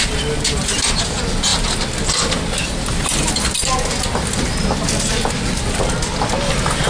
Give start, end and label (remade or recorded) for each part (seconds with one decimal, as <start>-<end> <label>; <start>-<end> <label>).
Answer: 0.0-6.9 recorded